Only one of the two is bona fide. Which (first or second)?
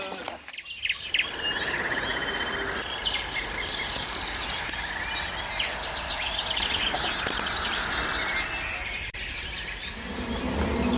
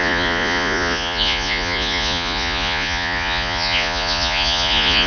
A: first